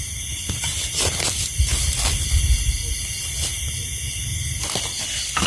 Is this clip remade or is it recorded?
recorded